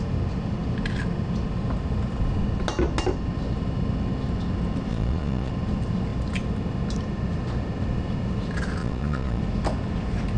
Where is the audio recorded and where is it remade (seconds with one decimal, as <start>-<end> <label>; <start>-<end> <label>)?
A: 0.0-4.9 recorded; 4.9-5.5 remade; 5.5-8.8 recorded; 8.8-9.4 remade; 9.4-10.4 recorded